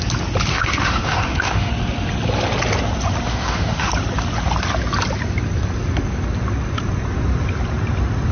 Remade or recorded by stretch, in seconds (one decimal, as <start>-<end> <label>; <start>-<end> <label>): 0.0-0.5 recorded; 0.5-1.7 remade; 1.7-3.3 recorded; 3.3-3.9 remade; 3.9-8.3 recorded